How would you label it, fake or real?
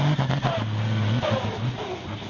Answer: real